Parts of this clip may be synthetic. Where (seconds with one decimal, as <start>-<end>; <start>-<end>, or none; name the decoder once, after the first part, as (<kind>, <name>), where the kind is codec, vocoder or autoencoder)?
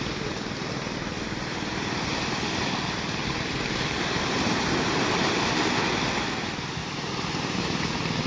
3.2-5.1 (vocoder, BigVGAN v2); 6.8-8.3